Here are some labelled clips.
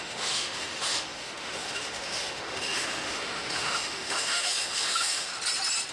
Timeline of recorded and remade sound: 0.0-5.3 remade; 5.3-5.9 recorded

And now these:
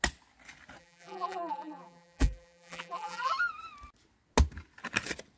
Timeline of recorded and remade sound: 0.0-0.8 recorded; 0.8-3.3 remade; 3.3-5.4 recorded

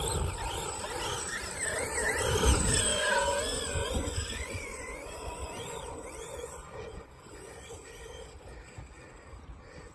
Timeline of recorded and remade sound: 0.0-2.9 recorded; 2.9-7.7 remade; 7.7-9.9 recorded

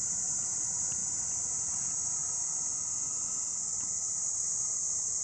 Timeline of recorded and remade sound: 0.0-2.2 remade; 2.2-3.9 recorded; 3.9-5.2 remade

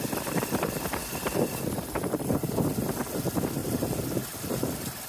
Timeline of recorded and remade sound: 0.0-1.0 recorded; 1.0-2.6 remade; 2.6-5.1 recorded

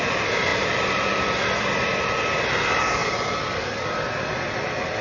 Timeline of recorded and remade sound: 0.0-5.0 recorded